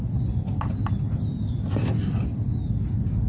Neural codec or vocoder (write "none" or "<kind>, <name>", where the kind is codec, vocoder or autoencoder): none